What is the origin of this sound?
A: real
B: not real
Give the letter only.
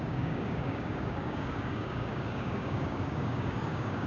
B